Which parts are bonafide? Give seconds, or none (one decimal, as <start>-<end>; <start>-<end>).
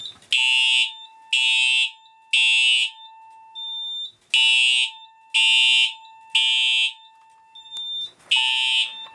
0.0-9.1